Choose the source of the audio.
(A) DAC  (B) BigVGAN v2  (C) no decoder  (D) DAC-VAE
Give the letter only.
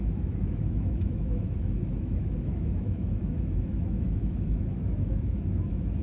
D